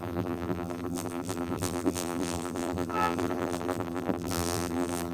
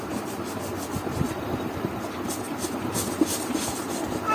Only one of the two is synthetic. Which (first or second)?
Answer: first